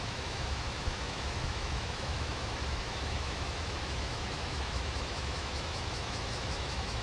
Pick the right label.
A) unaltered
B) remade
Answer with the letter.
B